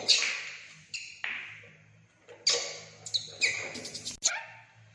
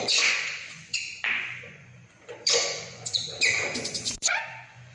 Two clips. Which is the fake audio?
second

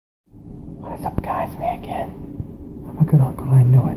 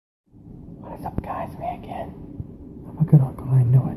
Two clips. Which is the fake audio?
second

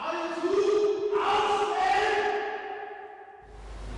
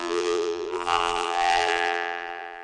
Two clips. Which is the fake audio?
second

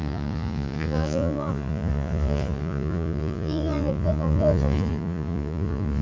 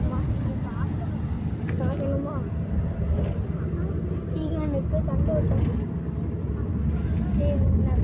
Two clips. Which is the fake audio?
first